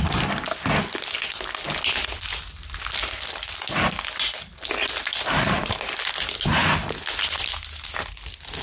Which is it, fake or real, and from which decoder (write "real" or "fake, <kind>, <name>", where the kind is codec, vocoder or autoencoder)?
real